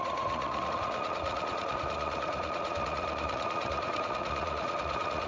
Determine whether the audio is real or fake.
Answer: fake